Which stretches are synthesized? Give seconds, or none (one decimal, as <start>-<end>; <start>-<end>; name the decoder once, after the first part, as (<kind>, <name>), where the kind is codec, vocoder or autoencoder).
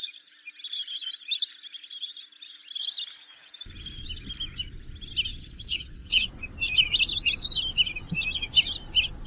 5.3-6.3 (vocoder, WaveNeXt)